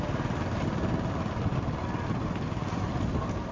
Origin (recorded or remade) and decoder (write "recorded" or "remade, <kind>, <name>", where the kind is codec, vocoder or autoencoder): recorded